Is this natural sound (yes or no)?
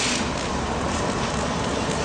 yes